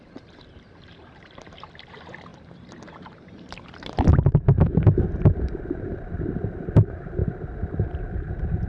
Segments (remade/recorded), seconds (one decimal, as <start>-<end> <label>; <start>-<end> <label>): 0.0-8.7 remade